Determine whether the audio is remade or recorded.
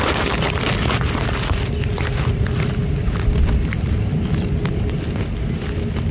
recorded